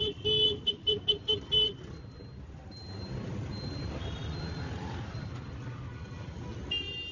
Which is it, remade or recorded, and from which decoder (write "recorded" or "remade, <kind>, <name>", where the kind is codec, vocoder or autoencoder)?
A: recorded